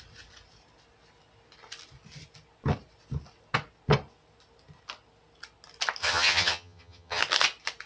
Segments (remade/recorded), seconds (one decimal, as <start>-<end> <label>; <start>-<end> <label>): 0.0-6.0 recorded; 6.0-7.2 remade; 7.2-7.9 recorded